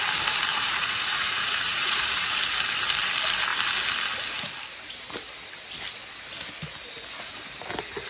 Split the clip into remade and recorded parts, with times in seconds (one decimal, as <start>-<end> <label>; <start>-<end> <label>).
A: 0.0-0.5 recorded; 0.5-2.4 remade; 2.4-8.1 recorded